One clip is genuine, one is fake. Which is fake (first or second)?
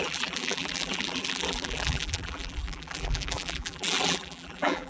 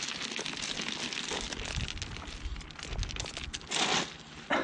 first